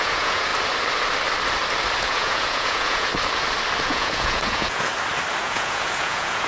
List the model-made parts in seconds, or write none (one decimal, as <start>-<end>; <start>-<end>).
0.0-0.5; 2.0-3.1; 3.8-4.9; 5.4-6.5